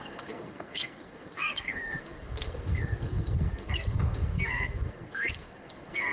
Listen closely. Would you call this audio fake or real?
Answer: fake